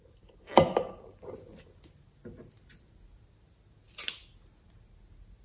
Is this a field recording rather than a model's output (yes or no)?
yes